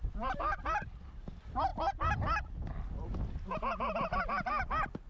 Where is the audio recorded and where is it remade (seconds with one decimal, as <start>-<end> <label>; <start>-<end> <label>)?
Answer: 0.0-5.1 recorded